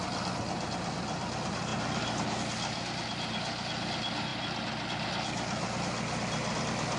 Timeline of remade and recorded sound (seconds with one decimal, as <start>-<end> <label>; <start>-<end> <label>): 0.0-7.0 recorded